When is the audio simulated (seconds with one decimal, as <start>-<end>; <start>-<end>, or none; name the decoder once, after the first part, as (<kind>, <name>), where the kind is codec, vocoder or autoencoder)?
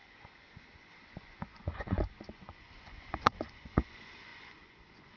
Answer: 0.0-5.2 (vocoder, Vocos)